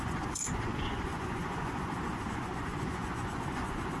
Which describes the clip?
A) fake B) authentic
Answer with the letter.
A